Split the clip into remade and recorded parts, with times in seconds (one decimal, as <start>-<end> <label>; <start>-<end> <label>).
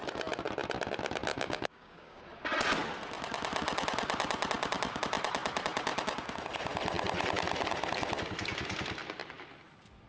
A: 0.0-1.3 recorded; 1.3-2.2 remade; 2.2-10.1 recorded